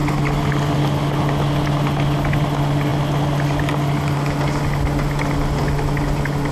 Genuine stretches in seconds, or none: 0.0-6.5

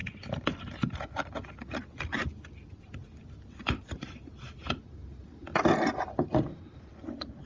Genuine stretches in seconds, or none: 0.0-7.5

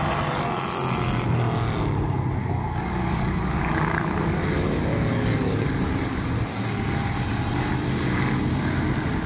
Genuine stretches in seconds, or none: 0.0-2.4; 5.6-9.3

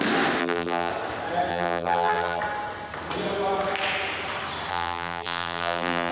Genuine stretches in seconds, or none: 0.0-0.4; 0.9-1.5; 2.4-4.7

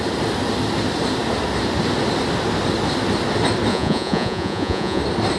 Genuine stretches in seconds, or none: 0.0-3.7; 5.0-5.4

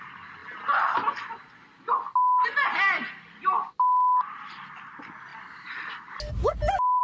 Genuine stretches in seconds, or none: 0.0-7.0

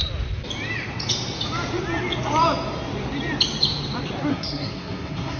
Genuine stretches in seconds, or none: 0.0-4.3